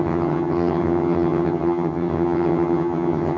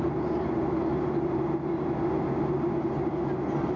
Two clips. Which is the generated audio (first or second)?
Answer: first